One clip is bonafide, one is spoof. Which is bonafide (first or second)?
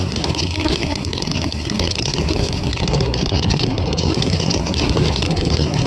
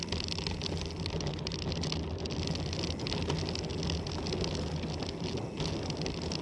second